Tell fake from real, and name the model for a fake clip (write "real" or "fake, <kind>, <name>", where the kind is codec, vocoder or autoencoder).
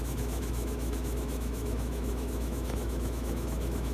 fake, autoencoder, DAC-VAE